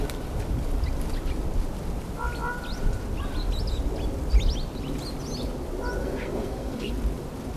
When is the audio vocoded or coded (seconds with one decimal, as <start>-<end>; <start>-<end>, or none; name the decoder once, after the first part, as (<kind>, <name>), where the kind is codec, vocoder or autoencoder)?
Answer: 6.0-6.9 (codec, SNAC)